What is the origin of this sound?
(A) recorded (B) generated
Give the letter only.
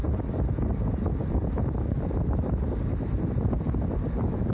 A